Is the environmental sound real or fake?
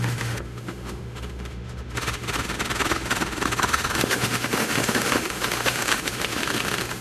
fake